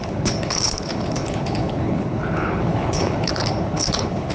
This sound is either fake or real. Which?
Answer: fake